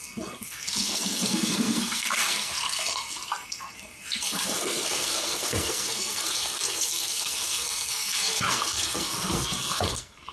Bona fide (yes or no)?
no